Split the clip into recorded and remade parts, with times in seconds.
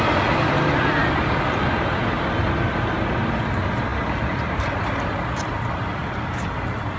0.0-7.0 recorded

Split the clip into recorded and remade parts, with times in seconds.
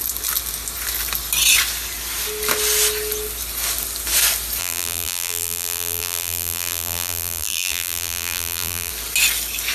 0.0-4.6 recorded; 4.6-8.9 remade; 8.9-9.7 recorded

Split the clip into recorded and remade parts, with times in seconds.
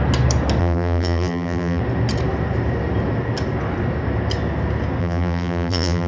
0.0-0.6 recorded; 0.6-1.8 remade; 1.8-5.0 recorded; 5.0-6.1 remade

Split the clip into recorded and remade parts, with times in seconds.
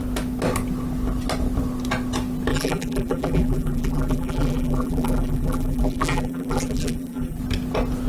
0.0-2.5 recorded; 2.5-7.4 remade; 7.4-8.1 recorded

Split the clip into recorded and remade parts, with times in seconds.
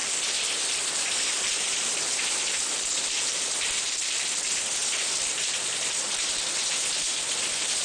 0.0-3.8 remade; 3.8-4.8 recorded; 4.8-6.7 remade; 6.7-7.8 recorded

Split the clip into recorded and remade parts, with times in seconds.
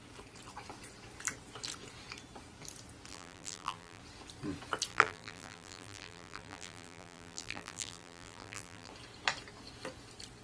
0.0-3.1 recorded; 3.1-4.0 remade; 4.0-4.9 recorded; 4.9-8.9 remade; 8.9-10.4 recorded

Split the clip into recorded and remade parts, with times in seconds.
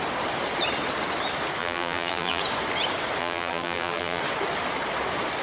0.0-1.6 recorded; 1.6-2.4 remade; 2.4-3.2 recorded; 3.2-4.2 remade; 4.2-5.4 recorded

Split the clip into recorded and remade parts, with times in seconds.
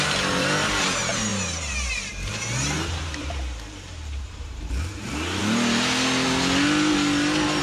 0.0-5.4 remade; 5.4-7.6 recorded